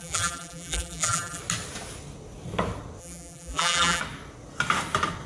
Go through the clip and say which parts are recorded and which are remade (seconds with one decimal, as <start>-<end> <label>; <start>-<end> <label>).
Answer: 0.0-1.4 remade; 1.4-3.0 recorded; 3.0-4.0 remade; 4.0-5.3 recorded